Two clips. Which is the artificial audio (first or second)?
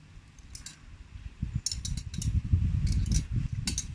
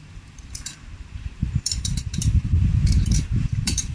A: second